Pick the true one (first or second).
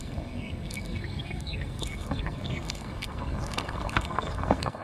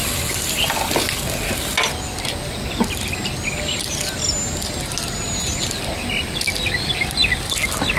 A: second